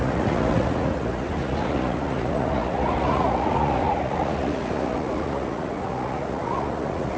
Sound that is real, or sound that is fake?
fake